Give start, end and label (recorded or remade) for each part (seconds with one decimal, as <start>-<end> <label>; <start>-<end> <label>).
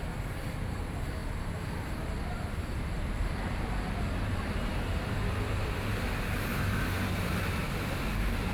0.0-1.2 remade; 1.2-1.8 recorded; 1.8-8.5 remade